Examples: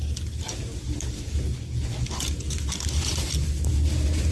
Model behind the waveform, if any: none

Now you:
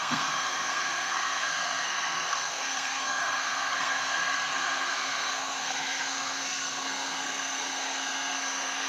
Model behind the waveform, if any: codec, SNAC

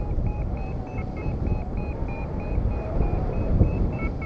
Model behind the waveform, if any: none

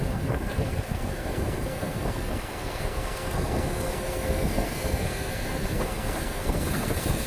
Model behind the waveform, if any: codec, SNAC